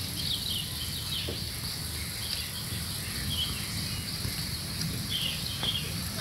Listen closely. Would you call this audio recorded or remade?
recorded